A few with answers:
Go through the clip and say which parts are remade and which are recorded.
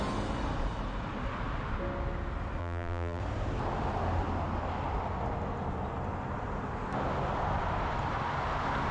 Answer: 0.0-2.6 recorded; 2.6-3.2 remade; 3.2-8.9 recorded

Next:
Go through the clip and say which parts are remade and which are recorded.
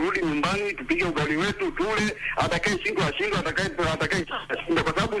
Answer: 0.0-5.2 recorded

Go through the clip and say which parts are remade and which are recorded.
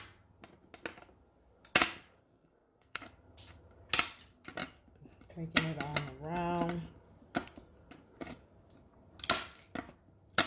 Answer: 0.0-2.2 recorded; 2.2-3.0 remade; 3.0-10.5 recorded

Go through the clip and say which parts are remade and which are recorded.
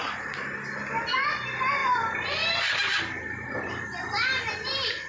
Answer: 0.0-1.8 recorded; 1.8-5.1 remade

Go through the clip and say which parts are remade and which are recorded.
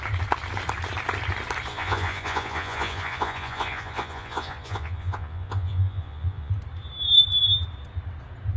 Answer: 0.0-1.7 recorded; 1.7-6.5 remade; 6.5-8.6 recorded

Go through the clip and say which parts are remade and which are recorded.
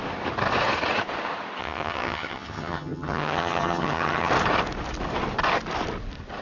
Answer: 0.0-1.6 recorded; 1.6-4.3 remade; 4.3-6.4 recorded